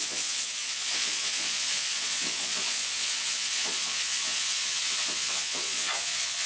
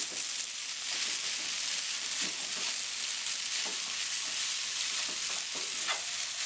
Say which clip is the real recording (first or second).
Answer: second